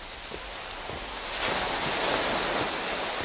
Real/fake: real